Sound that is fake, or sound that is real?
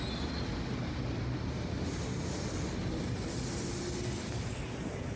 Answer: real